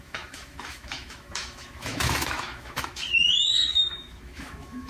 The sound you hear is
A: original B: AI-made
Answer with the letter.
B